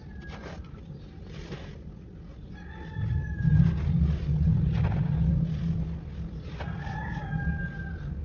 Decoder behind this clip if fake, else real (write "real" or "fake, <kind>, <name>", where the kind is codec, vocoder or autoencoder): real